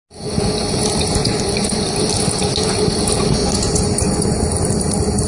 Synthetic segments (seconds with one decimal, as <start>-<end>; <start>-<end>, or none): 1.2-1.8; 3.4-4.4